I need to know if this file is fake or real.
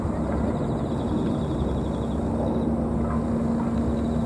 real